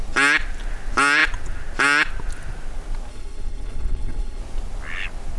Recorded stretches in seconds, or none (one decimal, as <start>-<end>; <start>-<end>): 0.0-3.1; 4.4-5.4